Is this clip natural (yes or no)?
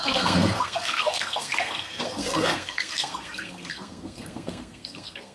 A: no